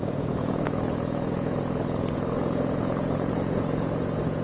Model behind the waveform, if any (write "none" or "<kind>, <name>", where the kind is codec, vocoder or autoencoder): vocoder, Vocos